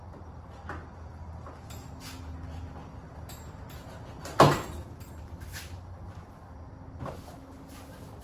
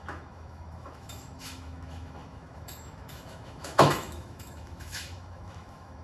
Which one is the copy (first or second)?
second